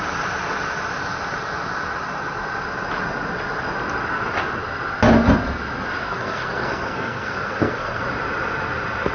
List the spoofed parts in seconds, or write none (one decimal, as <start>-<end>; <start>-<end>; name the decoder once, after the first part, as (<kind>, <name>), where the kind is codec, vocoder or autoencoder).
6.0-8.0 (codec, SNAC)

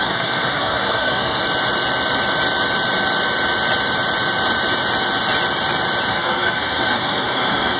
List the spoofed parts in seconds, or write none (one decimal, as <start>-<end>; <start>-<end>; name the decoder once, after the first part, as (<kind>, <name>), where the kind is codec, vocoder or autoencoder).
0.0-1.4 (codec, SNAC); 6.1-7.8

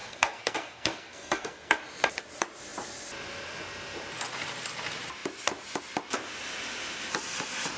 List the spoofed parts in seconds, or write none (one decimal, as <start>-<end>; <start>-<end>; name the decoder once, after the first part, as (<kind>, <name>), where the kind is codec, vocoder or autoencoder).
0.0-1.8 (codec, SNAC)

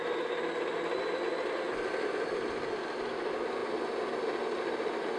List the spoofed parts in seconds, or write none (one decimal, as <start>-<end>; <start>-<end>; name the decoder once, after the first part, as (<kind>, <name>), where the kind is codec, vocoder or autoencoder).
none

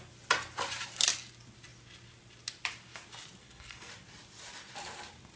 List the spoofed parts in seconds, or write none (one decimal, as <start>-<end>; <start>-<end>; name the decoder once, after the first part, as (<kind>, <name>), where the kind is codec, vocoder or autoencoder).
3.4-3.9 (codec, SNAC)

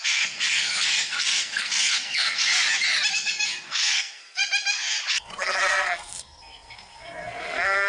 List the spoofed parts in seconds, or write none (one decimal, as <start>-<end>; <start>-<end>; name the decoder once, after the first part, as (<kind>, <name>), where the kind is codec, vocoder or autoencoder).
0.0-2.5 (codec, SNAC); 3.1-4.4; 5.1-7.9